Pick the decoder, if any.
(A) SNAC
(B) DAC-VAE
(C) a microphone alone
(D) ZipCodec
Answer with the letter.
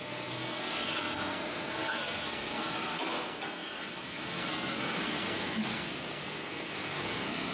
A